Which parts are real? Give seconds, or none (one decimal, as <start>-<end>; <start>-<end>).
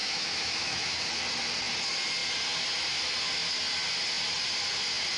1.1-5.2